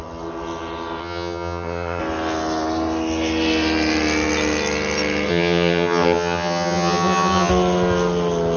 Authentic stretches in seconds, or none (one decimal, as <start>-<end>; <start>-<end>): 0.0-1.0; 2.0-5.3; 7.5-8.6